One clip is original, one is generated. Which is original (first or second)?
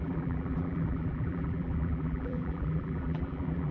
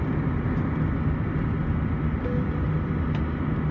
second